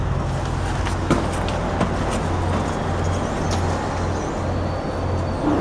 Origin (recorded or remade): recorded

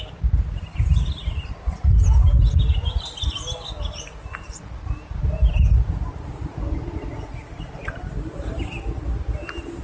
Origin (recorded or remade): recorded